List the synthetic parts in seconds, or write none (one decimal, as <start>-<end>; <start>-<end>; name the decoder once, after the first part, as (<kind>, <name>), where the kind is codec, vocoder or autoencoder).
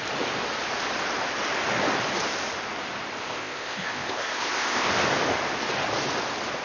3.2-4.9 (codec, ZipCodec)